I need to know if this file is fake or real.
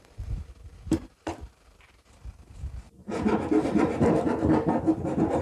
fake